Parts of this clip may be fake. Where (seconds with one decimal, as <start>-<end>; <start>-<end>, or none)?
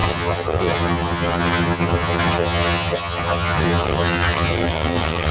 0.0-5.3